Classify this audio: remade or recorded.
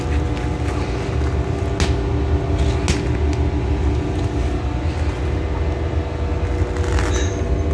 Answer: recorded